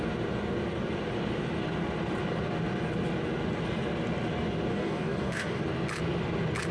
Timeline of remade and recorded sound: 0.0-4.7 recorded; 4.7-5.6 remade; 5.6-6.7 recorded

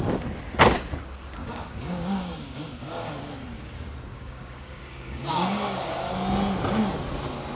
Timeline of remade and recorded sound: 0.0-1.4 recorded; 1.4-3.3 remade; 3.3-4.1 recorded; 4.1-6.1 remade; 6.1-7.6 recorded

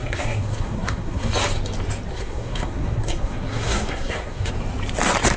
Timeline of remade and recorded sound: 0.0-1.3 remade; 1.3-2.1 recorded; 2.1-4.5 remade; 4.5-5.4 recorded

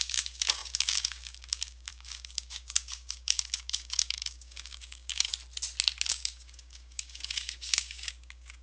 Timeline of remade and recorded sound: 0.0-5.3 remade; 5.3-6.1 recorded; 6.1-8.6 remade

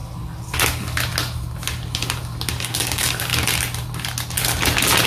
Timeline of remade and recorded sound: 0.0-2.5 recorded; 2.5-3.3 remade; 3.3-5.1 recorded

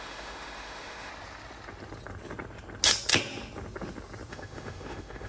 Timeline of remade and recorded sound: 0.0-1.1 remade; 1.1-4.3 recorded; 4.3-5.3 remade

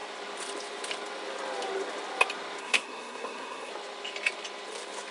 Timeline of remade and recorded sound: 0.0-2.6 recorded; 2.6-3.7 remade; 3.7-5.1 recorded

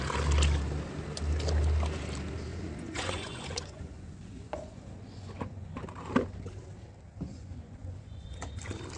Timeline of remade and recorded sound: 0.0-2.5 recorded; 2.5-5.8 remade; 5.8-7.3 recorded; 7.3-8.6 remade; 8.6-9.0 recorded